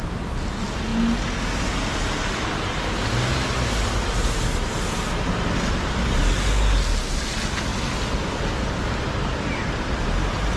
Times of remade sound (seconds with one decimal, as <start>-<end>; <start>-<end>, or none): none